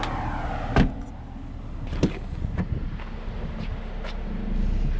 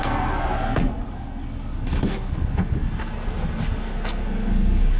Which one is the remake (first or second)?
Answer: second